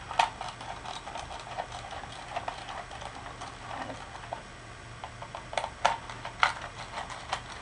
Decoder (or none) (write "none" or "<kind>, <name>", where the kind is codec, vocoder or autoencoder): none